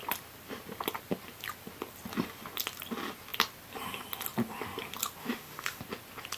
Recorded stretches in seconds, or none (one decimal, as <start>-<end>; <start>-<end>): 0.0-5.2; 5.8-6.4